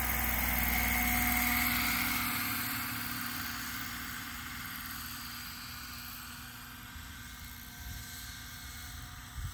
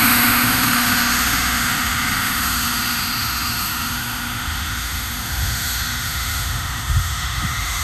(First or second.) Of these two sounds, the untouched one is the first